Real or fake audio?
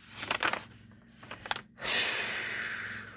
real